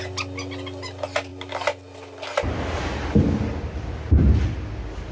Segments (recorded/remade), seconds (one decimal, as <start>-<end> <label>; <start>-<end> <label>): 0.0-5.1 recorded